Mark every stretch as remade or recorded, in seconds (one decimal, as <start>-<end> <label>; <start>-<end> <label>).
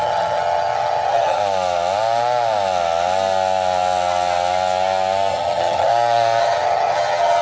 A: 0.0-1.4 remade; 1.4-5.3 recorded; 5.3-5.9 remade; 5.9-6.4 recorded; 6.4-7.4 remade